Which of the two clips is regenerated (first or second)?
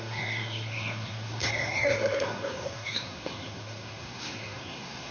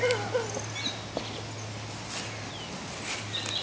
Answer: first